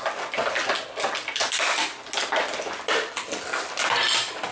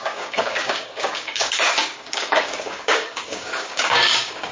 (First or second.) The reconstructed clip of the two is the second